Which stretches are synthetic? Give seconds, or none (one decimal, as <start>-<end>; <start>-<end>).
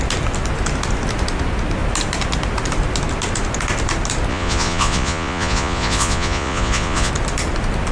4.3-7.1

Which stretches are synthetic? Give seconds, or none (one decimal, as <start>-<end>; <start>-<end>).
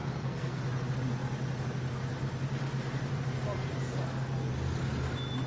0.0-0.6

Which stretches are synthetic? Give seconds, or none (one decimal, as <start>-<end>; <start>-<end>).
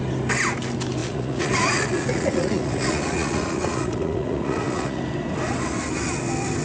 1.0-5.0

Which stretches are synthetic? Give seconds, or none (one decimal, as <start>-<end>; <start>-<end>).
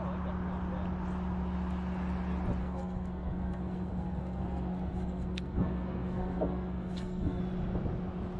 2.6-7.4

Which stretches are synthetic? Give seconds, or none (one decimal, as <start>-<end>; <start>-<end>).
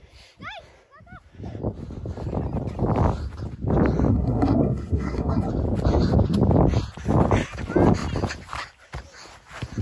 4.1-5.5